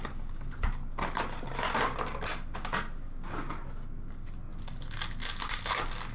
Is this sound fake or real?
real